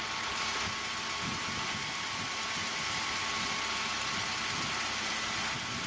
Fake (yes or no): no